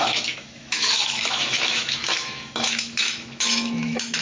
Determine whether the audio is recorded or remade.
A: remade